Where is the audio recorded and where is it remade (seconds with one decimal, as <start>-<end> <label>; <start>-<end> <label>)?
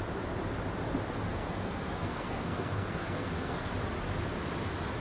0.0-1.3 recorded; 1.3-3.7 remade; 3.7-5.0 recorded